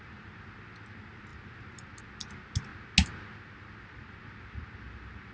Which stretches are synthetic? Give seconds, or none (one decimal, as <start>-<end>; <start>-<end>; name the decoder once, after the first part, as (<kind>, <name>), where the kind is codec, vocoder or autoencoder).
none